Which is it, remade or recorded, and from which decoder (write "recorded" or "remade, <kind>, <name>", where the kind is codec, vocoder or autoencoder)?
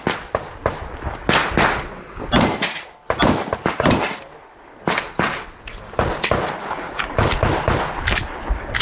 recorded